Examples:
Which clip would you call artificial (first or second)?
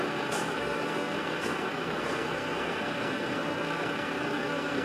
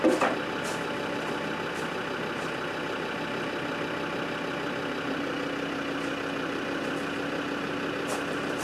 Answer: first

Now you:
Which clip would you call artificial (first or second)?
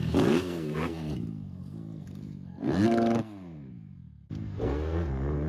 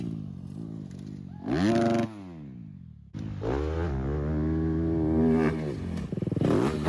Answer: first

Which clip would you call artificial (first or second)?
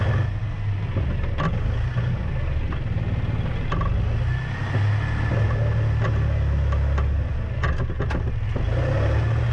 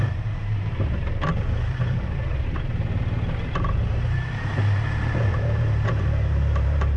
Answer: second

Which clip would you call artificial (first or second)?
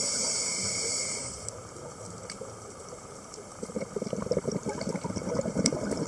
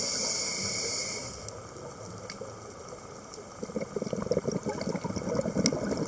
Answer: first